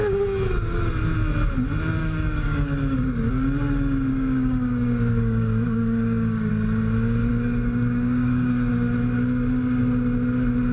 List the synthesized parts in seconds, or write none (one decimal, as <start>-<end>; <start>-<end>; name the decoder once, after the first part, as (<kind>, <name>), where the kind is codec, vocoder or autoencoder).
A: 2.0-3.3 (codec, DAC); 4.1-6.5; 7.3-8.7